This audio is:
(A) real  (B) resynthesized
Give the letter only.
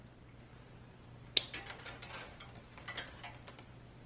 A